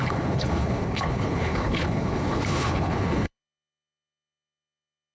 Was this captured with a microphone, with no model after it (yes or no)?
no